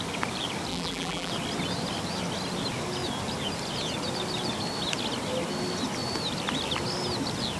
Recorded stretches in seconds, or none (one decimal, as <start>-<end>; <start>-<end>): 0.0-0.7; 1.3-7.6